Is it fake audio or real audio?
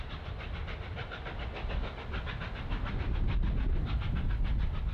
real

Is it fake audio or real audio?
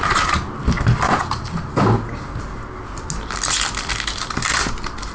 real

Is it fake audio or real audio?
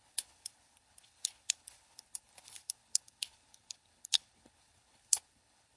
fake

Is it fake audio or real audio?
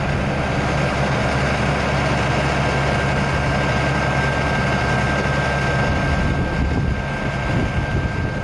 real